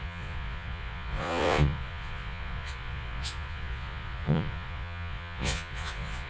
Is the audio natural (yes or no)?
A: no